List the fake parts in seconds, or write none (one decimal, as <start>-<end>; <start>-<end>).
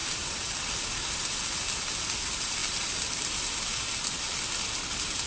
none